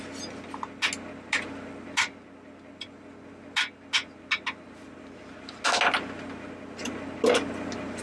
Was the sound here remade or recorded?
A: recorded